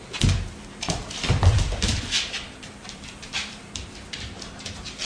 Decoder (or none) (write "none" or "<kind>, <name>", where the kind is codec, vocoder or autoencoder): vocoder, BigVGAN v2